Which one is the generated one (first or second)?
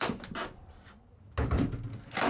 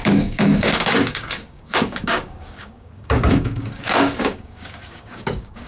second